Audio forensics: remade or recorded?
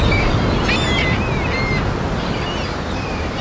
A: recorded